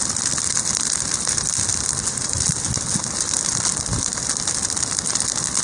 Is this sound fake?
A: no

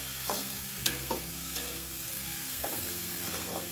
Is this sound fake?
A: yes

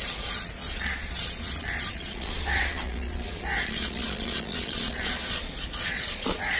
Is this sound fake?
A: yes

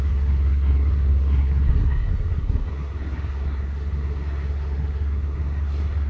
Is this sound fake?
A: yes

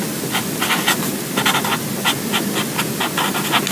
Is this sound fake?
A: no